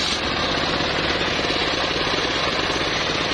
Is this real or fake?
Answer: real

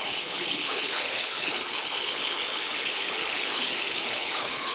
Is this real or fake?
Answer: fake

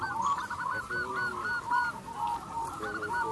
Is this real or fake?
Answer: real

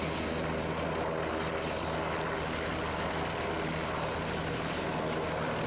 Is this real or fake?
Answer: real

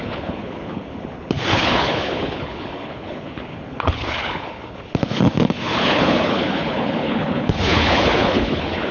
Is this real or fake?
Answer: fake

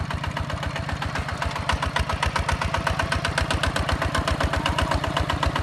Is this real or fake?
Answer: real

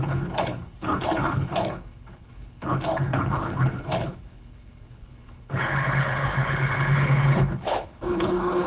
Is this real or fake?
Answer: fake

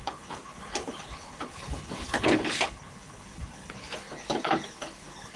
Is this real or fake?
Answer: fake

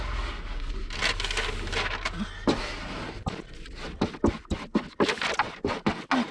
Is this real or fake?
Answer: real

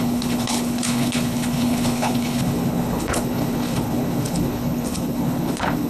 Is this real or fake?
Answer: fake